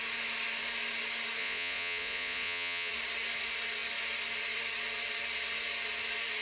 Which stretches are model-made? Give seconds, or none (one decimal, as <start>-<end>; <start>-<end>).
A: 1.4-2.9

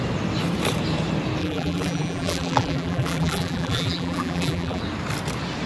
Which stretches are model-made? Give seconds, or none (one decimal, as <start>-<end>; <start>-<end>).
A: 1.4-4.8

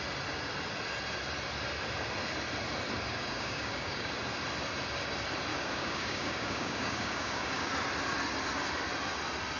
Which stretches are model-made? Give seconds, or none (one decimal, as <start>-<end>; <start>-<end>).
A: 3.1-4.1; 5.5-7.7